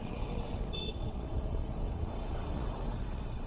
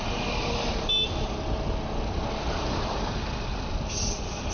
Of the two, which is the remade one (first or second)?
first